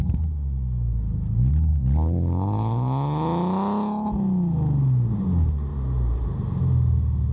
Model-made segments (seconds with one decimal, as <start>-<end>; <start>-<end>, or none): 5.7-6.6